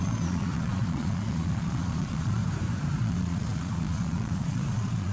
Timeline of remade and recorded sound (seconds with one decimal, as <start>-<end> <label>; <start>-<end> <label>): 0.0-2.4 remade; 2.4-3.0 recorded; 3.0-5.1 remade